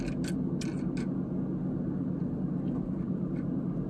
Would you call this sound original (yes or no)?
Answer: yes